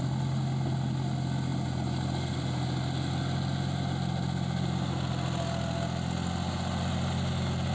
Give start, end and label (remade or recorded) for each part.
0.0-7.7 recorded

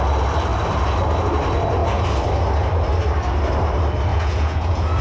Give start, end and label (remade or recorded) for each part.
0.0-4.1 recorded; 4.1-5.0 remade

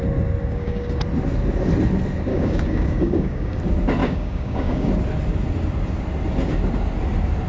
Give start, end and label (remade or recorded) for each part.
0.0-0.4 recorded; 0.4-1.0 remade; 1.0-2.3 recorded; 2.3-3.6 remade; 3.6-4.0 recorded; 4.0-4.9 remade; 4.9-7.5 recorded

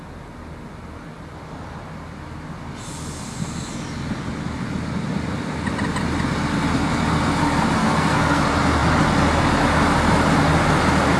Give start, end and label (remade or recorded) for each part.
0.0-7.8 recorded; 7.8-8.4 remade; 8.4-11.2 recorded

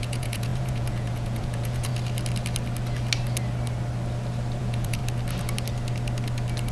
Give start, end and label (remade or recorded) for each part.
0.0-1.9 remade; 1.9-4.6 recorded; 4.6-5.0 remade; 5.0-6.7 recorded